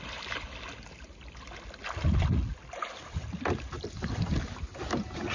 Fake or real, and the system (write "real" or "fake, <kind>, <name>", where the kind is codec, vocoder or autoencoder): real